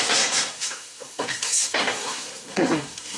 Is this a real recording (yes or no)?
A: no